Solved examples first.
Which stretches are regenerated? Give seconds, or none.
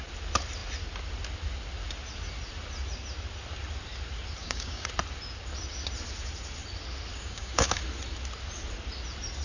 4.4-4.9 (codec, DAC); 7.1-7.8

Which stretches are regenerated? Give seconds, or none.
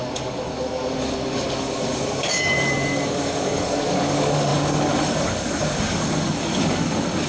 0.0-7.3 (codec, DAC)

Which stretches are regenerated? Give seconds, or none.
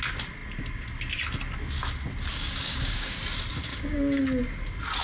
2.3-3.2 (codec, DAC); 3.7-4.2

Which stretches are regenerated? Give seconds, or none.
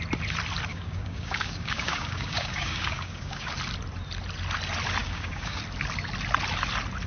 0.7-3.5 (codec, DAC); 5.0-5.6